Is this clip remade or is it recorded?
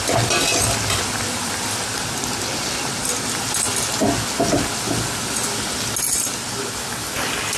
recorded